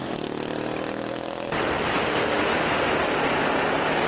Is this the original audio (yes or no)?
yes